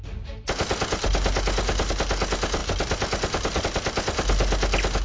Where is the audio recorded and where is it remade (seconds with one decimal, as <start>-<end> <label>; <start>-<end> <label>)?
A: 0.0-5.0 recorded